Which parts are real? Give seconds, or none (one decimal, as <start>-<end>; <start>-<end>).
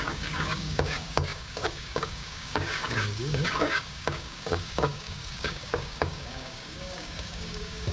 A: none